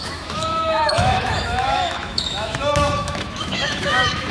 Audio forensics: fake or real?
fake